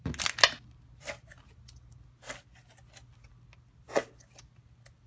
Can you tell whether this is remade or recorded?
recorded